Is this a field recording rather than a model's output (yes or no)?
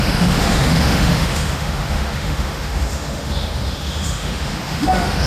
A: no